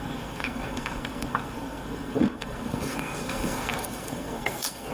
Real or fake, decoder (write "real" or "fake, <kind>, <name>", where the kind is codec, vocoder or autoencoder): fake, codec, SNAC